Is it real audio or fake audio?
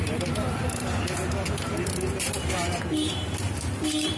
real